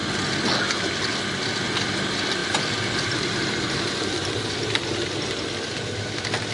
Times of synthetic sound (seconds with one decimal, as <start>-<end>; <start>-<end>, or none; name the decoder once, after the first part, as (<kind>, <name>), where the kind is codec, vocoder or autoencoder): 2.4-6.0 (vocoder, BigVGAN v2)